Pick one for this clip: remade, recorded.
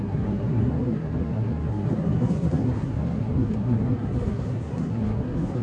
remade